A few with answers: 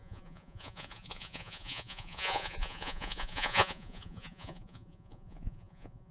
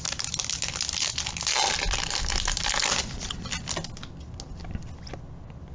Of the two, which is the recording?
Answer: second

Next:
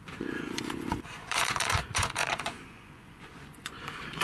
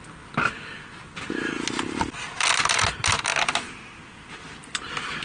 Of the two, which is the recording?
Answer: second